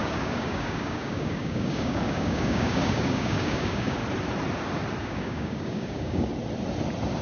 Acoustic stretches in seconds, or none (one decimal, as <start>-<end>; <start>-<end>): 4.0-5.0; 6.3-7.2